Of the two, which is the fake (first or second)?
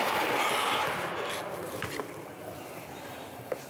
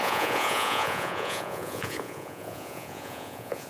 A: second